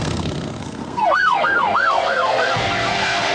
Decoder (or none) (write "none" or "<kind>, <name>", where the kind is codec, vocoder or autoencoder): codec, SNAC